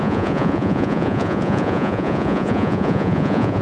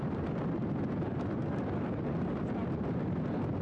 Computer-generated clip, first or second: first